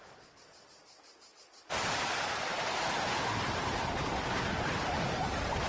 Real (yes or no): yes